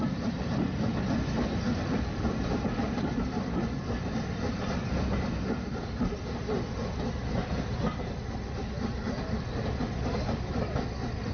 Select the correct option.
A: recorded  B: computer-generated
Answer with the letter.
A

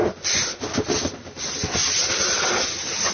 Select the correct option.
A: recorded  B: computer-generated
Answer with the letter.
A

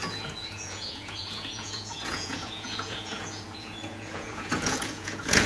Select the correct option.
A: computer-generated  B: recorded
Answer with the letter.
A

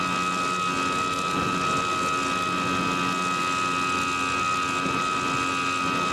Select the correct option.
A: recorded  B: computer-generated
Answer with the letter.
A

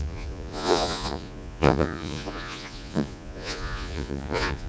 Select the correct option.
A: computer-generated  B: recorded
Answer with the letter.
A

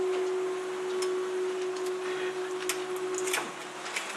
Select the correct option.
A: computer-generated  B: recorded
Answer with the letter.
B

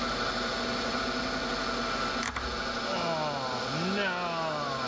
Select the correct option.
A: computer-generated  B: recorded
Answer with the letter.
B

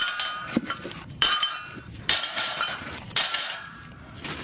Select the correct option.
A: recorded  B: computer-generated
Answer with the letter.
B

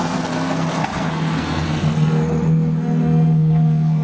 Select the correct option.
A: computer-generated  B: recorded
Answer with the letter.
A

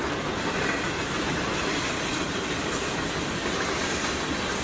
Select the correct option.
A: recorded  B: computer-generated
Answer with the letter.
A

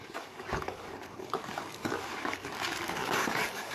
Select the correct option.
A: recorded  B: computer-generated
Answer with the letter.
B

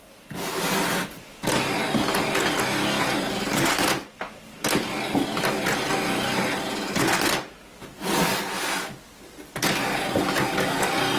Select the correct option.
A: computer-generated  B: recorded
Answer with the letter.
B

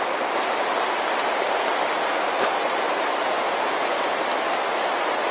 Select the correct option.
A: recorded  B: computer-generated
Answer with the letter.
A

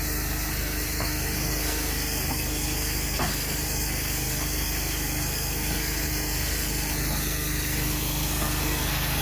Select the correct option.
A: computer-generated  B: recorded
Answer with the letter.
A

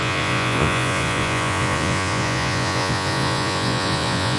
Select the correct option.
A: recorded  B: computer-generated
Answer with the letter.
B